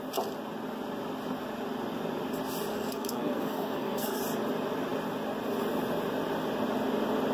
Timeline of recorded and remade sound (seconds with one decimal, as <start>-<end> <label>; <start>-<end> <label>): 0.0-2.7 recorded; 2.7-4.2 remade; 4.2-7.3 recorded

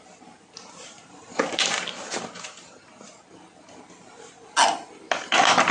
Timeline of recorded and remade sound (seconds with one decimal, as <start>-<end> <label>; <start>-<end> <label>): 0.0-5.7 recorded